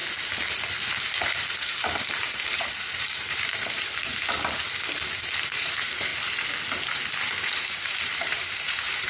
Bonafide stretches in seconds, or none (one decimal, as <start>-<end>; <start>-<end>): 0.0-1.0; 4.1-5.4; 6.1-7.6